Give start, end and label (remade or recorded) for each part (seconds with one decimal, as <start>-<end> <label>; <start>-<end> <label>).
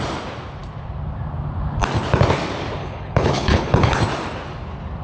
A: 0.0-2.8 recorded; 2.8-4.0 remade; 4.0-5.0 recorded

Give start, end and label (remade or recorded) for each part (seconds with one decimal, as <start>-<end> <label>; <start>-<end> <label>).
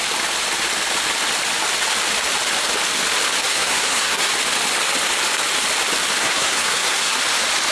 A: 0.0-3.4 recorded; 3.4-4.3 remade; 4.3-6.2 recorded; 6.2-7.2 remade; 7.2-7.7 recorded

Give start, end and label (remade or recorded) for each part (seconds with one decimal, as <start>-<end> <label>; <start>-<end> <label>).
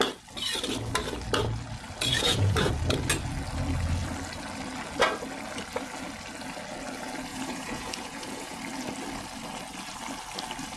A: 0.0-2.1 recorded; 2.1-2.7 remade; 2.7-7.3 recorded; 7.3-8.6 remade; 8.6-10.8 recorded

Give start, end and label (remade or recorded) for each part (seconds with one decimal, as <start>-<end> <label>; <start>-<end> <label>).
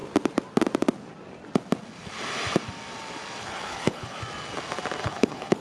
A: 0.0-3.4 recorded; 3.4-4.2 remade; 4.2-5.0 recorded; 5.0-5.6 remade